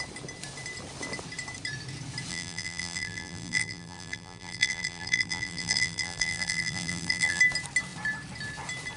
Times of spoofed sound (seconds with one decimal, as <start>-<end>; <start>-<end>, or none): 2.3-7.4